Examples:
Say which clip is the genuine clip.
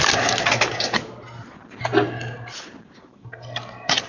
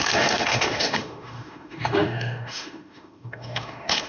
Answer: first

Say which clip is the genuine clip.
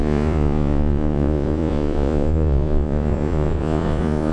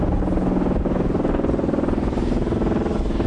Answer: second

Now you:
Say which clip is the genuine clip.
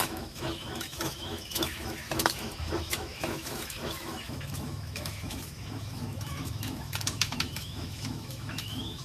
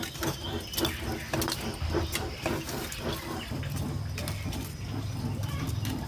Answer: second